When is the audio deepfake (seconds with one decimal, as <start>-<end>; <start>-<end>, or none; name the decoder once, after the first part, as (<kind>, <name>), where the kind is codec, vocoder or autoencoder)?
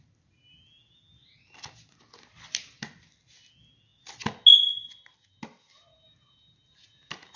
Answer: none